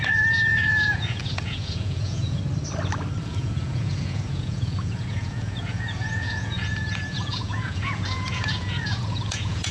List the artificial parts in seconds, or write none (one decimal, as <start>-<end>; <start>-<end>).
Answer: 0.0-2.4; 3.2-9.7